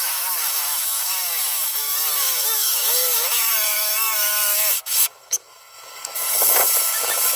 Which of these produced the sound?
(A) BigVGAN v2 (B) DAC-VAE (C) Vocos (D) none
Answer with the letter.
B